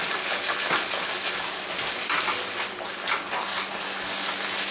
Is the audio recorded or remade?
recorded